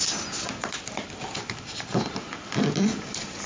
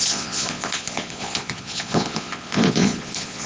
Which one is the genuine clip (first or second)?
first